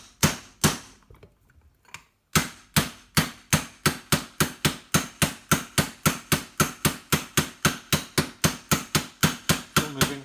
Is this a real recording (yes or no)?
yes